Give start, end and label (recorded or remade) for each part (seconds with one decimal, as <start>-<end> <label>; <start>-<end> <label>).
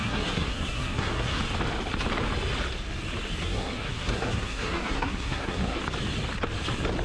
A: 0.0-1.4 remade; 1.4-3.4 recorded; 3.4-5.8 remade; 5.8-7.0 recorded